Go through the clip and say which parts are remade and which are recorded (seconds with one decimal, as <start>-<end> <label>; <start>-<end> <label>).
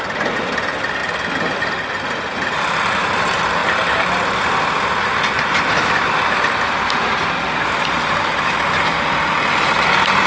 0.0-1.0 recorded; 1.0-1.8 remade; 1.8-3.6 recorded; 3.6-4.1 remade; 4.1-10.3 recorded